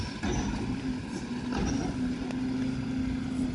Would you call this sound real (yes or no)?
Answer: yes